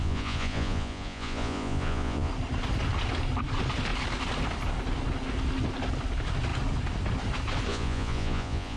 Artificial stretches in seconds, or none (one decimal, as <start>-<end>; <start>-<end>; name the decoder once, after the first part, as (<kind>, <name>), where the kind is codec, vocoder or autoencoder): 0.0-2.3 (vocoder, Vocos); 7.7-8.8